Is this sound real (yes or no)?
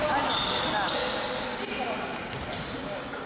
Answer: yes